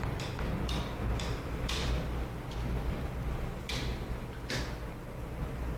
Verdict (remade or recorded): remade